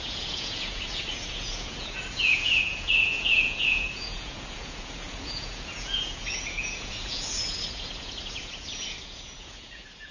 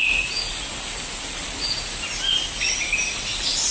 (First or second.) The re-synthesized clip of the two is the first